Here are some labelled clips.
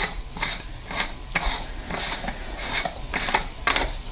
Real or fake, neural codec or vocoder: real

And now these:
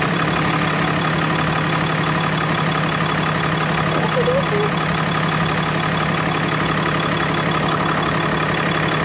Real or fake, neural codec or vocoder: real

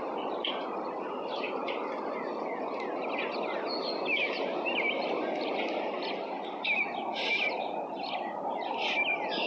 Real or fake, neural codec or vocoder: real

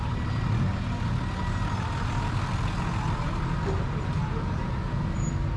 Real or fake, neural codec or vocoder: real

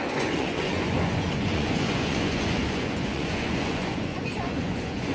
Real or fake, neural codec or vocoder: fake, vocoder, Vocos